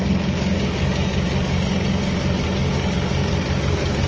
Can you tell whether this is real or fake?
fake